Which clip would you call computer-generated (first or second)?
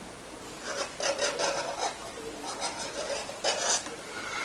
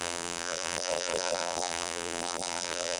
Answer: second